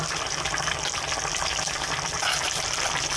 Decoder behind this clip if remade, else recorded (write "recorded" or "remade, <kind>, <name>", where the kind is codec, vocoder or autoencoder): remade, vocoder, BigVGAN v2